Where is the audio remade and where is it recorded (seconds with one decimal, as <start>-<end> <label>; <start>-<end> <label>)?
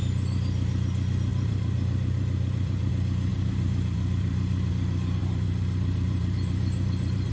0.0-1.3 recorded; 1.3-2.9 remade; 2.9-3.3 recorded; 3.3-4.7 remade; 4.7-5.2 recorded; 5.2-7.3 remade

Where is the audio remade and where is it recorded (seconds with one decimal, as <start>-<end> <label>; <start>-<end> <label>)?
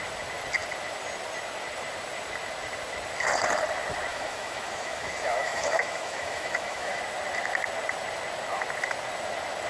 0.0-4.1 recorded; 4.1-7.0 remade; 7.0-9.7 recorded